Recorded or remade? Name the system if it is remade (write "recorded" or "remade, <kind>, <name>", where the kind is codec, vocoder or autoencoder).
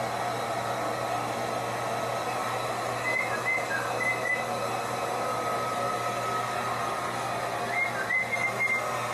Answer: recorded